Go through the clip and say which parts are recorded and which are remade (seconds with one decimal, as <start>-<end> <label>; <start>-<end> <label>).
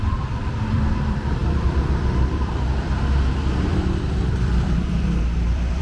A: 0.0-5.8 remade